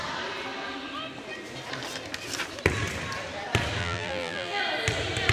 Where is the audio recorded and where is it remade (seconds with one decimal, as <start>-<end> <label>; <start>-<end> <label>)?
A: 0.0-3.8 recorded; 3.8-4.6 remade; 4.6-5.3 recorded